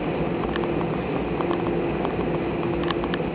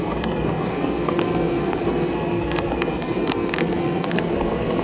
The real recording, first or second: first